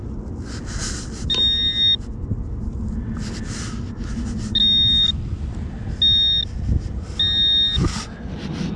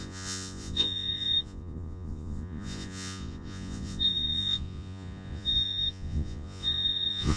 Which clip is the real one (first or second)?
first